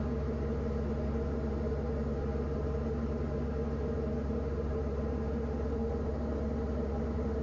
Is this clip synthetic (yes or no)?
no